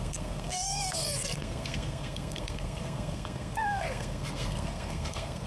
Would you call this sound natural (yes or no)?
no